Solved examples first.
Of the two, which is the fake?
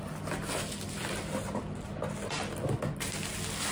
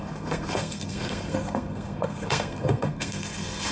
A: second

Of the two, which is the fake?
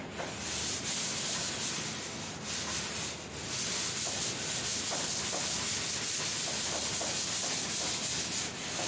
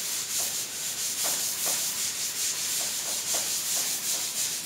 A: second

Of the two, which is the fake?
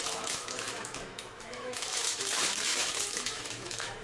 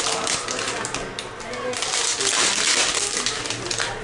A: first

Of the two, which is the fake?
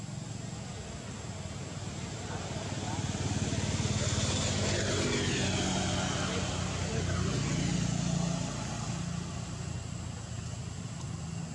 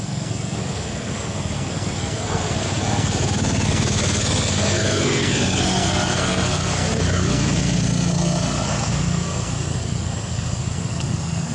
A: second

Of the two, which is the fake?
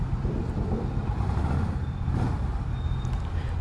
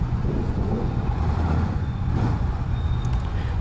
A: second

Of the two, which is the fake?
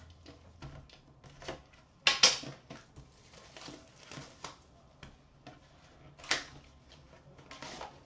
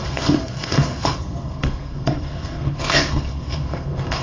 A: second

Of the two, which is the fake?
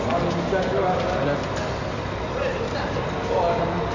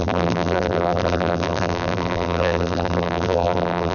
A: second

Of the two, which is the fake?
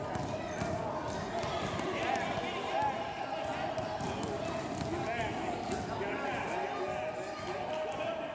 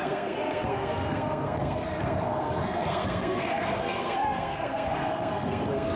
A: second